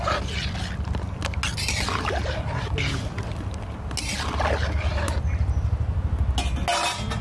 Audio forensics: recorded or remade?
recorded